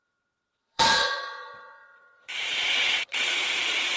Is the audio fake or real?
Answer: fake